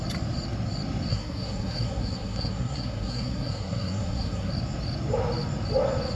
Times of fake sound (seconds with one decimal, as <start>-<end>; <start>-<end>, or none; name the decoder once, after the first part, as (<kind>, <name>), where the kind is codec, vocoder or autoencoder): 1.1-4.5 (codec, SNAC)

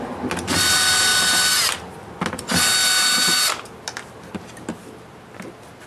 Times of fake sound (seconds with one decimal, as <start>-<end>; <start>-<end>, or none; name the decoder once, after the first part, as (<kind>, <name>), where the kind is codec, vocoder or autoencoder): none

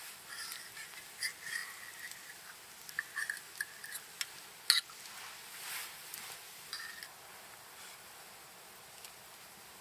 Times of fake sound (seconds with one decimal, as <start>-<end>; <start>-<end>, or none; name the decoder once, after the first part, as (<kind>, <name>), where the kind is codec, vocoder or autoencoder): none

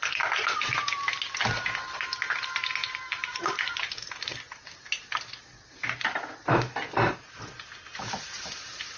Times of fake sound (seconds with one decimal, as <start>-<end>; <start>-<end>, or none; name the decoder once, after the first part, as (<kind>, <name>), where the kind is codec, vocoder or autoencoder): none

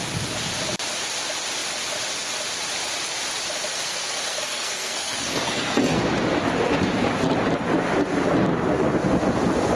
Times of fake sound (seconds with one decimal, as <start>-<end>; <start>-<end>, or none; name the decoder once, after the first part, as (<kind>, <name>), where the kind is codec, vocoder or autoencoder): 3.7-6.0 (codec, SNAC)

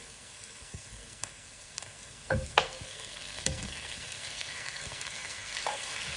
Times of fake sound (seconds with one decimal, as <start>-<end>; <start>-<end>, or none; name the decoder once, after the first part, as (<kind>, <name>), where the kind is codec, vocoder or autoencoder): 0.0-6.2 (codec, SNAC)

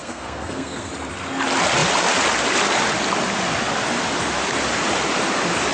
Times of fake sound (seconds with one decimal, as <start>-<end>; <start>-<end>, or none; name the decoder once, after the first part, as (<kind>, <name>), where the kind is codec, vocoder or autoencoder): 0.0-0.9 (codec, SNAC)

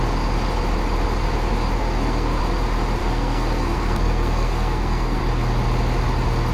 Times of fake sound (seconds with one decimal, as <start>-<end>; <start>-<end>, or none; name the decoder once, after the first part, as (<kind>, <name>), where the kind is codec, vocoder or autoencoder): 1.8-2.4 (codec, SNAC); 3.0-5.2